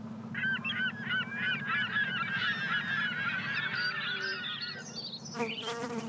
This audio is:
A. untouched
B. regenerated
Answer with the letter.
A